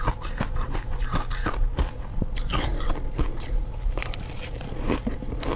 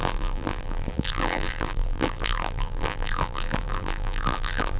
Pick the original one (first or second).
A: first